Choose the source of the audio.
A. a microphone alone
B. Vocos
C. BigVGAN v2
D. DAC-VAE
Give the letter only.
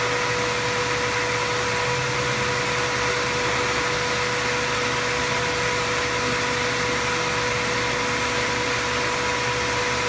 A